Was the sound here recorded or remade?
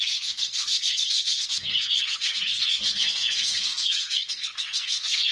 remade